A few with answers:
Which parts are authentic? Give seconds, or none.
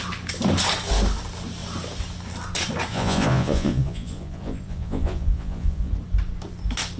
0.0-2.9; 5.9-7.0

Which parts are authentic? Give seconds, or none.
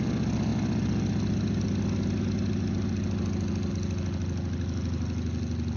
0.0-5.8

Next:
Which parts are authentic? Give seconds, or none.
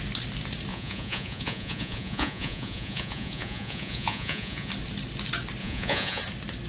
0.0-0.7; 4.7-5.6; 6.2-6.7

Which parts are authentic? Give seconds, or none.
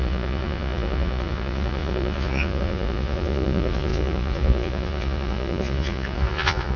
none